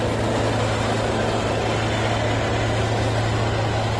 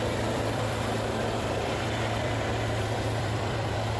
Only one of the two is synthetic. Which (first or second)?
second